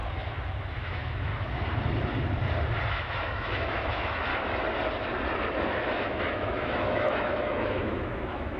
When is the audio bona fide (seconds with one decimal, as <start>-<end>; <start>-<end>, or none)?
0.0-0.6; 1.3-2.9; 4.3-5.7